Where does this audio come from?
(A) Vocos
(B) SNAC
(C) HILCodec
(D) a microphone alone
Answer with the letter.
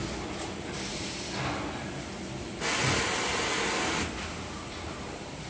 D